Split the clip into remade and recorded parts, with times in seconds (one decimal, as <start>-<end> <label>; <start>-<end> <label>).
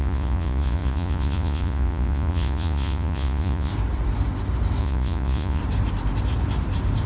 0.0-3.7 remade; 3.7-4.8 recorded; 4.8-5.6 remade; 5.6-7.1 recorded